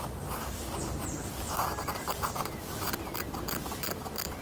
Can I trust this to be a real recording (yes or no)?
no